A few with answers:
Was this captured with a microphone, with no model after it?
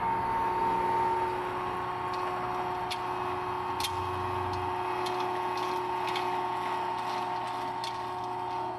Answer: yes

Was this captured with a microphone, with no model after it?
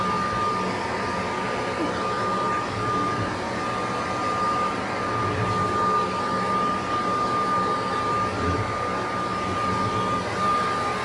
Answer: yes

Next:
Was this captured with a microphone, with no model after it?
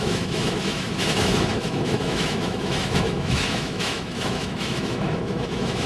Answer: no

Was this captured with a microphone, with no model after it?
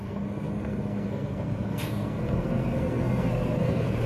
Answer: no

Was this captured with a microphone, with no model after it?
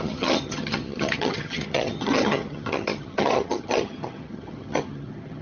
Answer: no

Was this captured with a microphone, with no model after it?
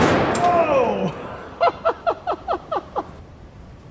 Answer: no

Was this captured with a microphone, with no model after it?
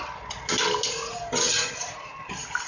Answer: yes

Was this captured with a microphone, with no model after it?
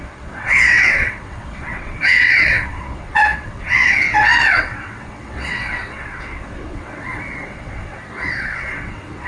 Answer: no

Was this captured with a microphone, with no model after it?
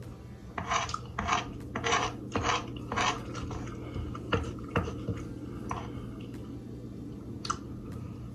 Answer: yes